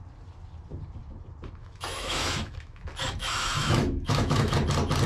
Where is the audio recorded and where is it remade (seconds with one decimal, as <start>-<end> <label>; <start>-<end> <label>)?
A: 0.0-1.6 recorded; 1.6-2.8 remade; 2.8-3.2 recorded; 3.2-4.5 remade; 4.5-5.1 recorded